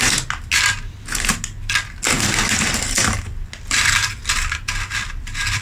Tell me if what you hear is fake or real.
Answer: real